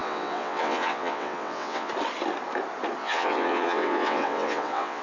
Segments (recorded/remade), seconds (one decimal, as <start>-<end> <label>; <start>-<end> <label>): 0.0-1.9 remade; 1.9-3.0 recorded; 3.0-5.0 remade